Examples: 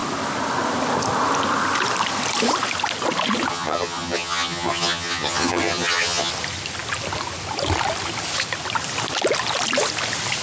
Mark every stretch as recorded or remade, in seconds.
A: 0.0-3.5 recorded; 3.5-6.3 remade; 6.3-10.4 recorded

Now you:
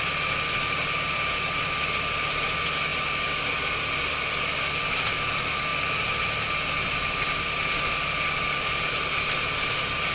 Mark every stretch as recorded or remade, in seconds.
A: 0.0-10.1 recorded